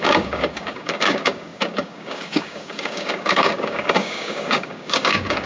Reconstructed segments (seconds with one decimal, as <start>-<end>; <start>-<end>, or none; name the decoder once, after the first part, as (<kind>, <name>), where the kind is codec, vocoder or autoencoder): 0.0-5.5 (codec, DAC)